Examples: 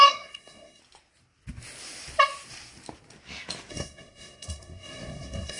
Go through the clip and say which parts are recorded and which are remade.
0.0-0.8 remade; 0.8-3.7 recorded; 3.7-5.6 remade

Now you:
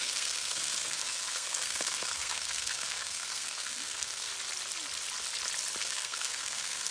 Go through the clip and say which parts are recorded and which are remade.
0.0-4.3 remade; 4.3-5.8 recorded; 5.8-6.9 remade